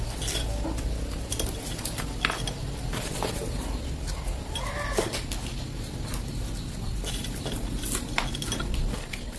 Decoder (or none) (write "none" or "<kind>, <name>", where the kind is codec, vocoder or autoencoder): none